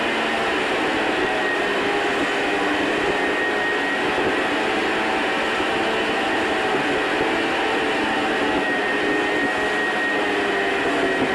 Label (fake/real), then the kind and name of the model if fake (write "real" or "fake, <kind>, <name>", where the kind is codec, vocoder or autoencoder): real